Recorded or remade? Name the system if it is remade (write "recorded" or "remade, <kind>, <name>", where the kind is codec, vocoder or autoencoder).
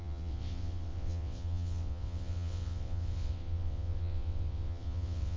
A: remade, vocoder, WaveNeXt